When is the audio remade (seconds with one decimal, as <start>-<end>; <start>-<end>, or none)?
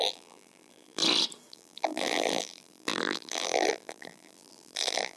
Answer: 0.0-1.0; 1.5-5.2